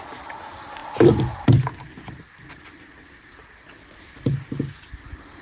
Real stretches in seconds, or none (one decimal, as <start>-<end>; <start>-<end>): 0.0-0.8; 4.0-5.4